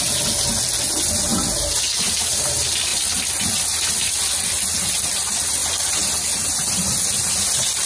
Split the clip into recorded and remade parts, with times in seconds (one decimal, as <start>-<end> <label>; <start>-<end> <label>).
0.0-7.9 recorded